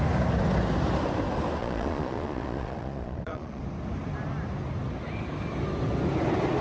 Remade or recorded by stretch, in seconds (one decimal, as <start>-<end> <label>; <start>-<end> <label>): 0.0-1.6 recorded; 1.6-3.6 remade; 3.6-6.6 recorded